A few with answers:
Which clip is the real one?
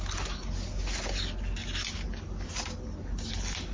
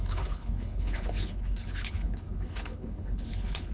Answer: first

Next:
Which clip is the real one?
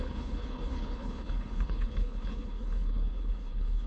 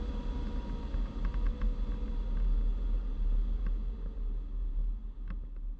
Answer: second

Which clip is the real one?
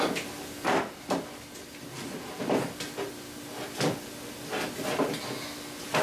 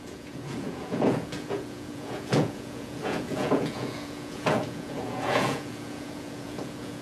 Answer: first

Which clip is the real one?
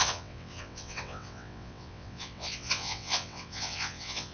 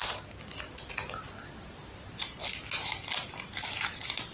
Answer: second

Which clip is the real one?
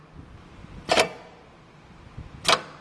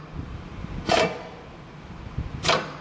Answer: first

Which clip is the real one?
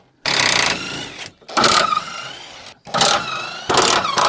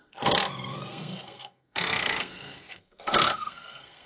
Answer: first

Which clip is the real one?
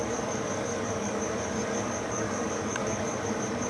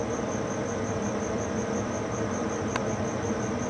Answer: second